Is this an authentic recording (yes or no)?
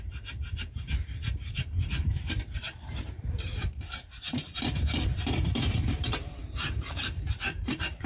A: no